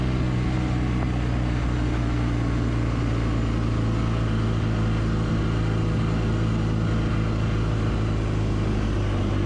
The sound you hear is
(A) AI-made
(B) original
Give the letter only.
B